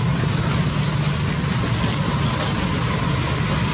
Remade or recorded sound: recorded